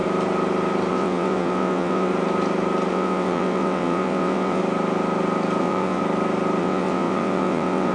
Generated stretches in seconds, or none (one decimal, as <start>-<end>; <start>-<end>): 0.9-2.1; 2.9-4.6; 5.6-6.0; 6.6-7.9